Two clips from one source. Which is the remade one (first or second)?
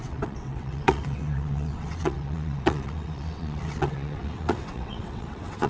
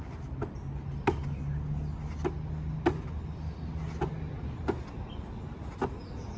first